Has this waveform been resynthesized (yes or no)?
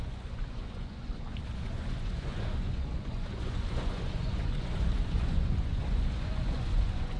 yes